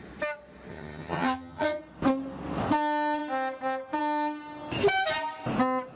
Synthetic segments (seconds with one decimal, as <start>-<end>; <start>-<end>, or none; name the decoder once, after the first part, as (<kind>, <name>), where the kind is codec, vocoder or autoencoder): 0.7-1.8 (vocoder, HiFi-GAN)